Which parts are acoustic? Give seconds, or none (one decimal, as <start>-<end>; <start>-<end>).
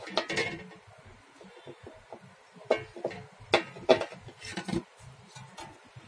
0.0-6.1